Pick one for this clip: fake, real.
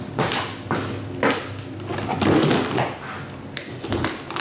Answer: real